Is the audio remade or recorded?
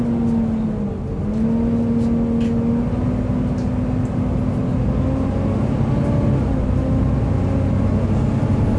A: recorded